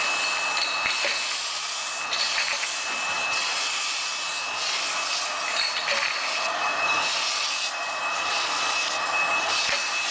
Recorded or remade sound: recorded